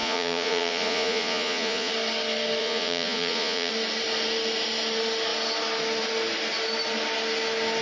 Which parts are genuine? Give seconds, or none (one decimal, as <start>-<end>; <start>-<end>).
1.9-2.6; 3.7-7.8